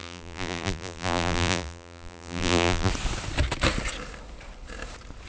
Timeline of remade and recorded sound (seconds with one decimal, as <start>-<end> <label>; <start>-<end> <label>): 0.0-2.9 remade; 2.9-5.3 recorded